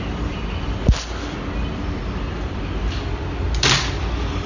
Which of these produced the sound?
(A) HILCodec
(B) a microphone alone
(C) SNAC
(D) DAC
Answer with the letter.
B